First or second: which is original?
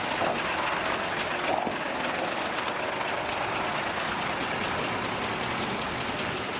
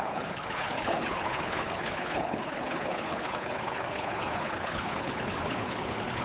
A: first